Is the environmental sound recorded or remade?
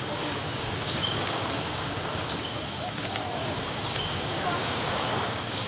remade